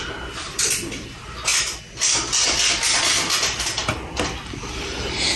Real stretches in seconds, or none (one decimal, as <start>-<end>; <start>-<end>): 0.0-5.4